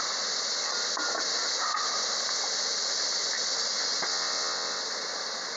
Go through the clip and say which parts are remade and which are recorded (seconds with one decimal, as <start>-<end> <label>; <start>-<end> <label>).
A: 0.0-4.1 recorded; 4.1-4.8 remade; 4.8-5.6 recorded